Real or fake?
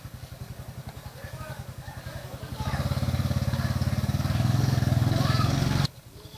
fake